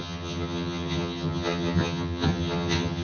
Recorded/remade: remade